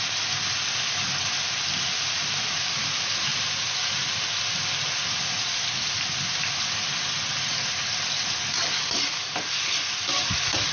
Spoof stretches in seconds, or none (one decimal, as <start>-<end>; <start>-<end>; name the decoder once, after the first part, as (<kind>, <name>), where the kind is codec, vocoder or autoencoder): none